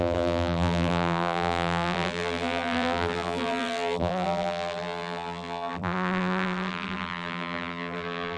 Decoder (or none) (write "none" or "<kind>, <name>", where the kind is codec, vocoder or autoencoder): vocoder, BigVGAN v2